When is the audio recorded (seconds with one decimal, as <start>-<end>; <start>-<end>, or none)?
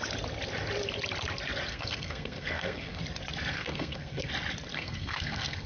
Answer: 0.0-1.7; 3.0-3.5; 4.3-4.7